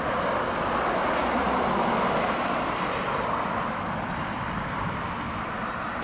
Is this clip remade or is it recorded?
remade